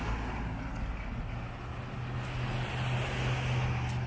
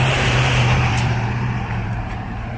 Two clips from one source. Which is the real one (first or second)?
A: first